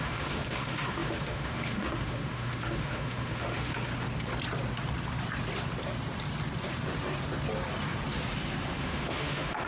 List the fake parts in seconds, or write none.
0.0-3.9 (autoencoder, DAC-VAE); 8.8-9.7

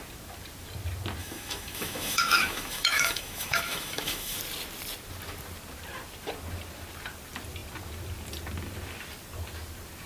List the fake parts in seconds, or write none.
1.2-4.4 (autoencoder, DAC-VAE)

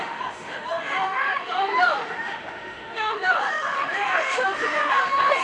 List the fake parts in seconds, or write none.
0.0-5.4 (autoencoder, DAC-VAE)

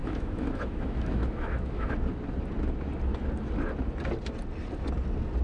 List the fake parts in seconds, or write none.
0.0-1.9 (autoencoder, DAC-VAE)

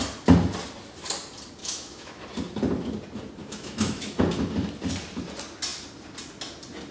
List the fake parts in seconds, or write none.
1.6-2.2 (autoencoder, DAC-VAE); 3.4-4.2